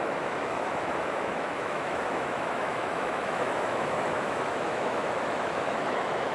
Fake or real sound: fake